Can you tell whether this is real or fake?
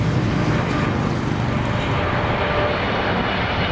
real